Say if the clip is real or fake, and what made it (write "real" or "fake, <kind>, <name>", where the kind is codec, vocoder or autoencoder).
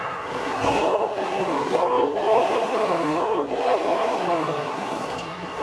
fake, codec, SNAC